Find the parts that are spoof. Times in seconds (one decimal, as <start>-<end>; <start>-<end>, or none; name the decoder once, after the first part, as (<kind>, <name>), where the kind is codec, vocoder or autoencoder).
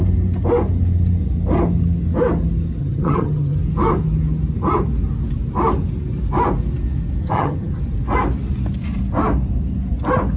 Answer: 2.8-3.6 (vocoder, HiFi-GAN); 7.2-7.8